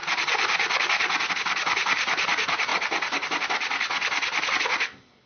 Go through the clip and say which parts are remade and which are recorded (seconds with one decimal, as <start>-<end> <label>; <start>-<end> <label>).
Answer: 0.0-5.3 recorded

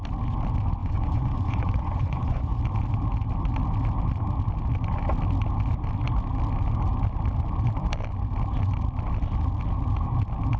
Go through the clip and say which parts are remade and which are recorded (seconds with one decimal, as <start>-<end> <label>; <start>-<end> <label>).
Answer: 0.0-0.8 recorded; 0.8-2.6 remade; 2.6-10.6 recorded

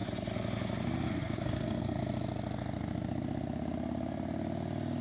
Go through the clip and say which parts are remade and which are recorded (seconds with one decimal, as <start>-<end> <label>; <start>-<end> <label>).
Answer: 0.0-1.1 recorded; 1.1-2.0 remade; 2.0-5.0 recorded

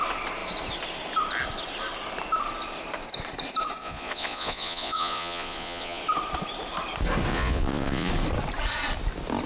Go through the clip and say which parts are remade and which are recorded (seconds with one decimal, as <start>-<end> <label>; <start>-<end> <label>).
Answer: 0.0-3.8 recorded; 3.8-6.0 remade; 6.0-7.3 recorded; 7.3-8.1 remade; 8.1-9.5 recorded